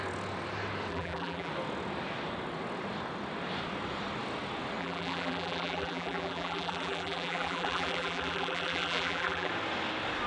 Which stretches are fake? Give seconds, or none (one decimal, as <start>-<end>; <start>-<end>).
0.9-1.5; 4.8-9.5